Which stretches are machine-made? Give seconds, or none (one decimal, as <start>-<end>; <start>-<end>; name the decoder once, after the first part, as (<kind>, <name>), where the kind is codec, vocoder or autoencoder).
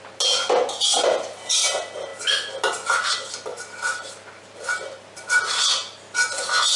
3.5-5.4 (vocoder, BigVGAN v2)